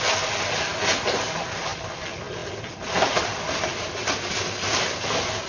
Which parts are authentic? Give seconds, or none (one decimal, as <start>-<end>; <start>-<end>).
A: 0.0-5.5